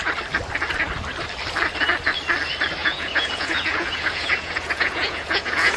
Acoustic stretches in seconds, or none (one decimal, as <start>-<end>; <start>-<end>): 0.0-2.8